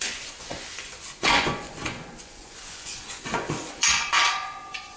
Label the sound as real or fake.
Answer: fake